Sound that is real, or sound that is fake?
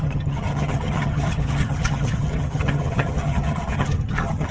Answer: fake